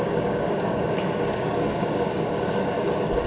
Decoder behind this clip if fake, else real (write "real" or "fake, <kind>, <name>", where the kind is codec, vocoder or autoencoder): fake, codec, DAC